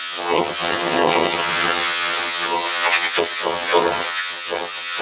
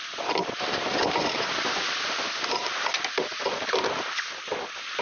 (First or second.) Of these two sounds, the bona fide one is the second